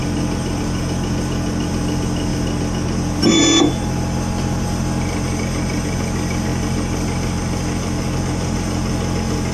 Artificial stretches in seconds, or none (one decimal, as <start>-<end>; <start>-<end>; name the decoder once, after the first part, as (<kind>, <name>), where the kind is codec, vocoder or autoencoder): none